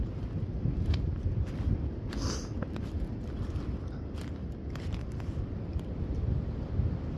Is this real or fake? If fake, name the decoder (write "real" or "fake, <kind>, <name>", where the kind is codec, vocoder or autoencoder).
real